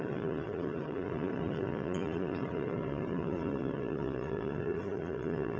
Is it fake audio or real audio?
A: fake